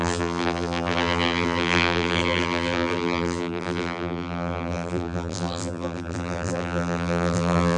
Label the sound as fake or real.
fake